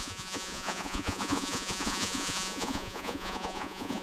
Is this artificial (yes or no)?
yes